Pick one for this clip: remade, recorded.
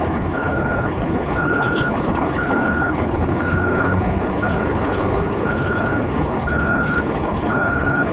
remade